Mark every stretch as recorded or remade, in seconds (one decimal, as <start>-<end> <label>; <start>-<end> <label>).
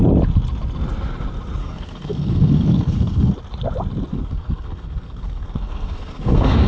0.0-1.6 recorded; 1.6-3.3 remade; 3.3-4.1 recorded; 4.1-6.7 remade